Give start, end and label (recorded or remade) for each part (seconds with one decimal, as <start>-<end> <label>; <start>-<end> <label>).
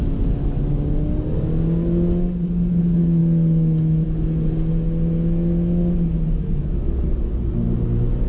0.0-8.3 recorded